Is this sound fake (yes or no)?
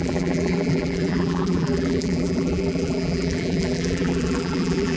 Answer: yes